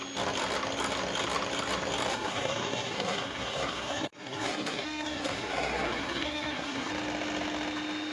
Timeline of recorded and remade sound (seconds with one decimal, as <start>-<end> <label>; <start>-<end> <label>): 0.0-2.1 recorded; 2.1-6.9 remade; 6.9-8.1 recorded